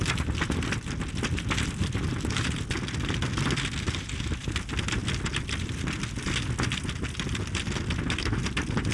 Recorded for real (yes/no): yes